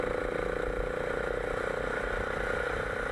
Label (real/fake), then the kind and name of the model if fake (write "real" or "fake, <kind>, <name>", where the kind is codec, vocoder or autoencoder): real